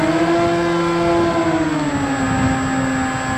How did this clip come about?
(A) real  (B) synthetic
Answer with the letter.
A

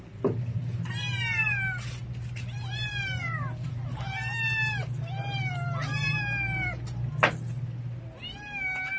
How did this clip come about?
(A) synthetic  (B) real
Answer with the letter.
B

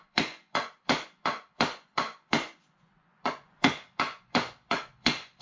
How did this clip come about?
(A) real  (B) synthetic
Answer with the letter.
B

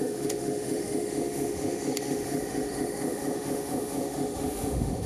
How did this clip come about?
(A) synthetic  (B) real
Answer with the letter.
A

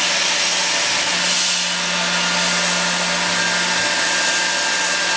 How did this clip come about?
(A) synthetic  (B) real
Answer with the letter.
B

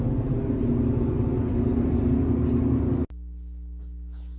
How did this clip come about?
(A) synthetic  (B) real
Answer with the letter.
B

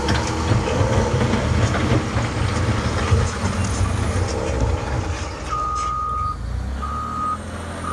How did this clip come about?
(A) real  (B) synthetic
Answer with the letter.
A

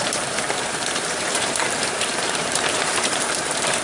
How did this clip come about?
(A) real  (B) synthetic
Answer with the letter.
B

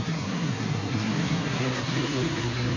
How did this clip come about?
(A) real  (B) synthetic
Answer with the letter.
B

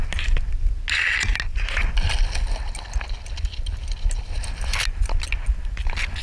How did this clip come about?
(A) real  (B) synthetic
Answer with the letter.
A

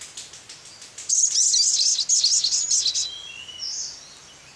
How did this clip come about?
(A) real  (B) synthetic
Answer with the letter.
A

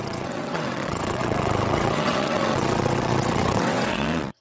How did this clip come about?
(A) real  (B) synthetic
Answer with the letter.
B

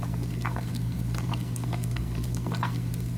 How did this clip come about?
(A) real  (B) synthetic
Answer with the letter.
B